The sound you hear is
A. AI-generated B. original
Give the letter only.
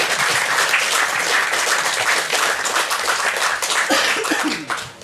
B